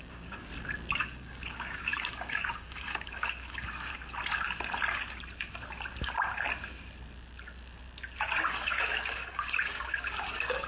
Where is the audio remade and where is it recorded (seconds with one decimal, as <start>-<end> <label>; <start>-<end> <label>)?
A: 0.0-0.5 remade; 0.5-1.0 recorded; 1.0-3.9 remade; 3.9-8.5 recorded; 8.5-10.7 remade

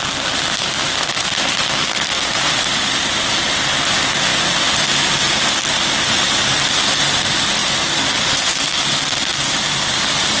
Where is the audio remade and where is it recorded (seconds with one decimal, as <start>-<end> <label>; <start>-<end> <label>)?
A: 0.0-10.4 recorded

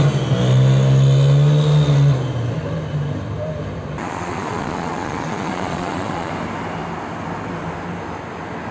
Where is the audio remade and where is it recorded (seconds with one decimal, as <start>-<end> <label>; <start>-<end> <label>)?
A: 0.0-4.0 recorded; 4.0-6.3 remade; 6.3-8.7 recorded

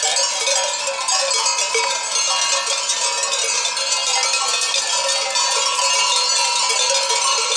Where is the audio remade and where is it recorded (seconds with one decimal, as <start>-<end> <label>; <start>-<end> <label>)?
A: 0.0-7.6 recorded

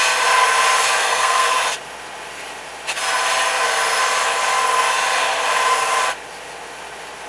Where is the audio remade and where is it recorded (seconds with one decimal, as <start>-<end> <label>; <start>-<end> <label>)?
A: 0.0-1.0 recorded; 1.0-1.5 remade; 1.5-7.3 recorded